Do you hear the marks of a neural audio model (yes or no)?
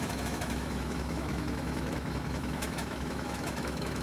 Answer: yes